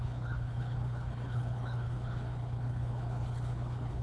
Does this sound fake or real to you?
fake